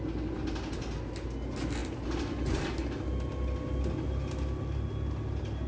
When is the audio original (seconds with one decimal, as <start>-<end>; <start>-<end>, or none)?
0.0-5.7